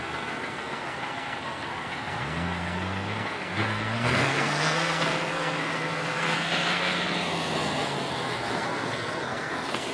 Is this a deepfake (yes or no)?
yes